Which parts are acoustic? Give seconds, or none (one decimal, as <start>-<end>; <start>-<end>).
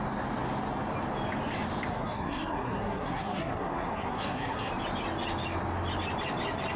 0.0-1.9; 4.7-6.8